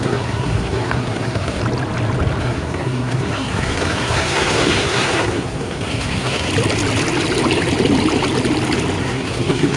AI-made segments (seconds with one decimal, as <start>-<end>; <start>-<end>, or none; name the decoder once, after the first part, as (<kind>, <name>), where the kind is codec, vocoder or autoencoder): 0.0-1.6 (codec, SNAC); 2.4-6.5; 9.0-9.8